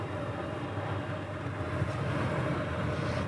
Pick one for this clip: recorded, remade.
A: recorded